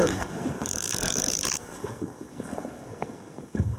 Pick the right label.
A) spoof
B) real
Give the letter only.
A